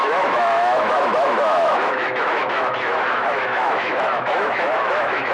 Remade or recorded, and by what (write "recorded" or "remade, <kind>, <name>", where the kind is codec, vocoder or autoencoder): remade, autoencoder, DAC-VAE